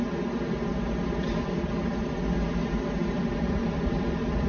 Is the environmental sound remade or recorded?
recorded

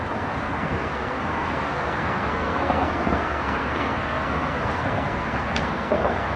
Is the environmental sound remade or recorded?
remade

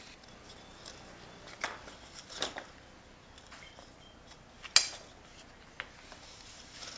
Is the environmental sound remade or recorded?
recorded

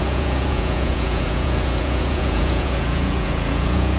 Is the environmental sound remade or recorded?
remade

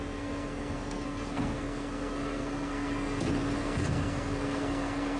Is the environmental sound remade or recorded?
remade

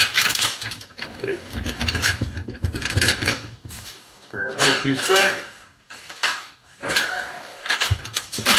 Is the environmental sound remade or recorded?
remade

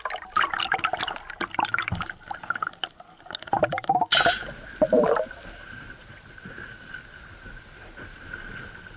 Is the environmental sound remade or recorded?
recorded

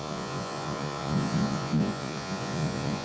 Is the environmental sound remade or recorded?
remade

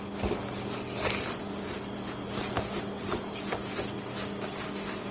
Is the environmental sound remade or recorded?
recorded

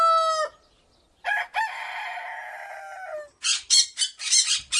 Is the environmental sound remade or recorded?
recorded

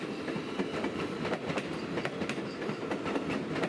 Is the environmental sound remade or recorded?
recorded